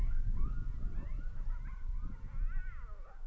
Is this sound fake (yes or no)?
no